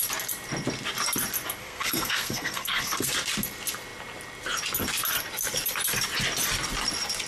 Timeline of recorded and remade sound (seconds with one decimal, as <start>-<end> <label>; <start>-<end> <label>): 0.0-1.6 recorded; 1.6-3.1 remade; 3.1-7.3 recorded